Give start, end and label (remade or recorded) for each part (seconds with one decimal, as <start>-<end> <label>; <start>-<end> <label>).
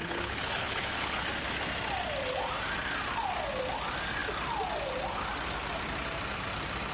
0.0-1.3 remade; 1.3-6.9 recorded